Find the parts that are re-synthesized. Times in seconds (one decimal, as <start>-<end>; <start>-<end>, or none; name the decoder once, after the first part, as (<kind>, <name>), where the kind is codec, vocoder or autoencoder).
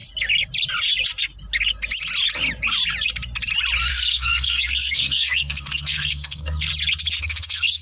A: 3.9-6.7 (codec, SNAC); 7.2-7.8